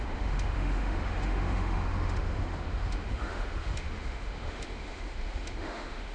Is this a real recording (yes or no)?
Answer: no